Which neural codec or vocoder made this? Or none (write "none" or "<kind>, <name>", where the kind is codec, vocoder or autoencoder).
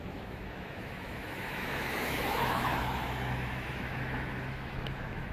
autoencoder, DAC-VAE